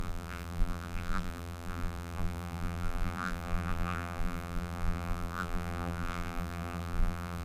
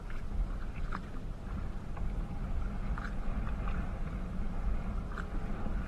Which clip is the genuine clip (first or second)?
second